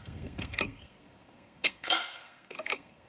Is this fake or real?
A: fake